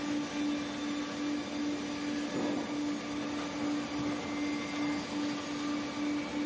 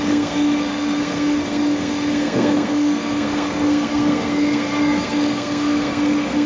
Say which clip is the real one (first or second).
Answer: first